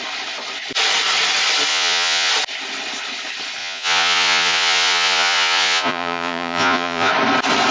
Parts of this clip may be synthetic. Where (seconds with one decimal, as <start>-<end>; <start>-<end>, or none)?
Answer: 1.7-2.3; 3.6-7.1